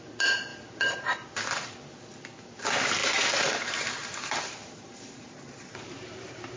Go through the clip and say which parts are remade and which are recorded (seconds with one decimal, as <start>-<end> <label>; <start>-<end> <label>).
0.0-0.5 recorded; 0.5-1.9 remade; 1.9-3.0 recorded; 3.0-6.6 remade